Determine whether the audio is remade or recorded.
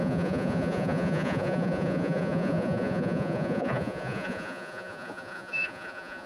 remade